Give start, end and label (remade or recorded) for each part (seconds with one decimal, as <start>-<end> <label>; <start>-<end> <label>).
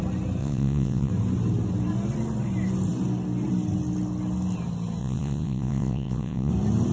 0.0-0.4 recorded; 0.4-1.1 remade; 1.1-5.0 recorded; 5.0-6.5 remade; 6.5-6.9 recorded